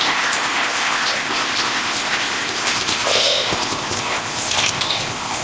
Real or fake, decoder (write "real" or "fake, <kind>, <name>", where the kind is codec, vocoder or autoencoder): fake, codec, ZipCodec